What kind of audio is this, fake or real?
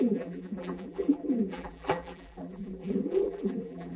fake